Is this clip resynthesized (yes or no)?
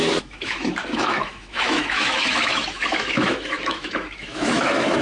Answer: yes